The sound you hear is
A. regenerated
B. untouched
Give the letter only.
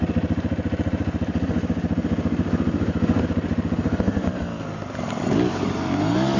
B